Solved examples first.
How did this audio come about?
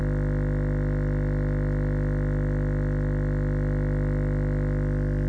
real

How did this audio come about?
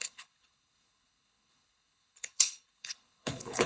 fake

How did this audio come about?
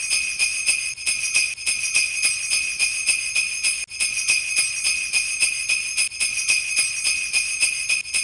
real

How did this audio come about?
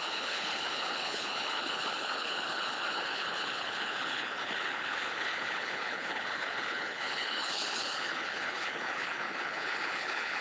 fake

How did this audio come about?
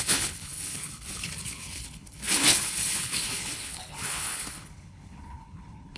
fake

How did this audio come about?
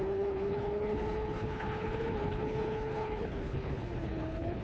fake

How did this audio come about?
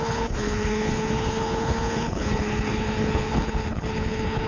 fake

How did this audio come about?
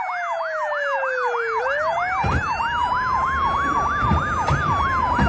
real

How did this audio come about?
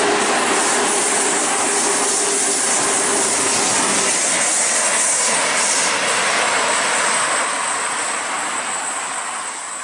real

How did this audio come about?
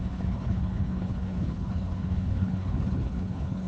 fake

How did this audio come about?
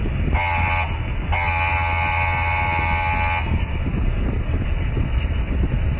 real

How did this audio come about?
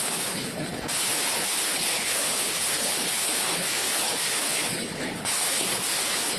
fake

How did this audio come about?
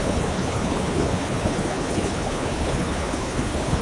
fake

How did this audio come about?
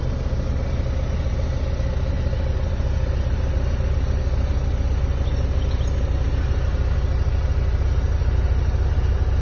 real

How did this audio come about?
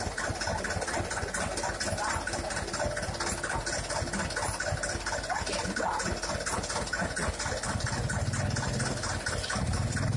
real